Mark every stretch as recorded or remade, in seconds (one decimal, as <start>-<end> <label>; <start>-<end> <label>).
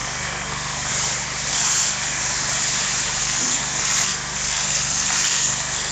0.0-0.9 remade; 0.9-1.5 recorded; 1.5-2.2 remade; 2.2-3.2 recorded; 3.2-5.9 remade